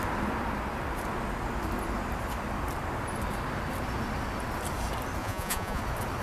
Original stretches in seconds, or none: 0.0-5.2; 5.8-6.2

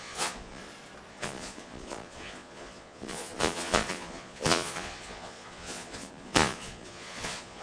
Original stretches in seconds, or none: 0.6-1.1

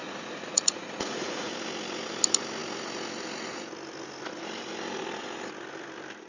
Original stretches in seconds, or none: 1.5-6.3

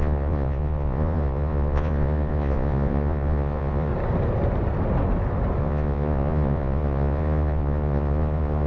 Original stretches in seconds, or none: 3.9-5.6